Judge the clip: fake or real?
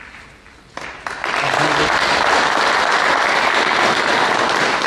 real